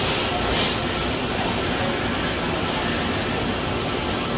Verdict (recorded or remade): recorded